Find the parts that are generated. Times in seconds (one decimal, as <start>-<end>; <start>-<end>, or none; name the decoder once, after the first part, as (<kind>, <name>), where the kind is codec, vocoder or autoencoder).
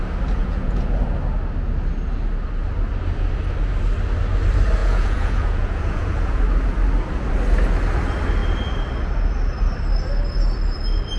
0.4-1.0 (vocoder, Vocos); 4.8-6.4